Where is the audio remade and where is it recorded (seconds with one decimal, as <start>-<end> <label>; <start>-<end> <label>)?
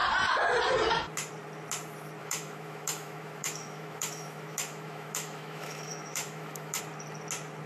0.0-2.2 recorded; 2.2-6.8 remade; 6.8-7.7 recorded